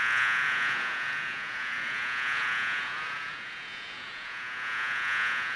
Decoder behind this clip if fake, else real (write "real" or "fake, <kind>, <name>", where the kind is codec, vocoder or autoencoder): fake, vocoder, Vocos